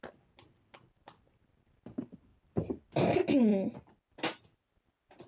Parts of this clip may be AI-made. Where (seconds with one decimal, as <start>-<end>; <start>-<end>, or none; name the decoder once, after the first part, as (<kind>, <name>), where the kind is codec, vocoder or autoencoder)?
3.5-4.1 (vocoder, BigVGAN v2)